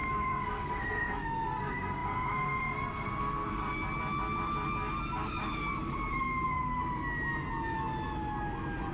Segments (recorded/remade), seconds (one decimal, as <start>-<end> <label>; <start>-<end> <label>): 0.0-3.6 remade; 3.6-6.1 recorded; 6.1-6.8 remade; 6.8-8.9 recorded